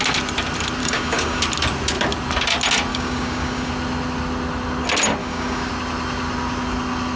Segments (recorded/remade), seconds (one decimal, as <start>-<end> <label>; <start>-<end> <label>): 0.0-0.8 recorded; 0.8-1.4 remade; 1.4-2.9 recorded; 2.9-3.7 remade; 3.7-5.2 recorded; 5.2-5.7 remade; 5.7-7.2 recorded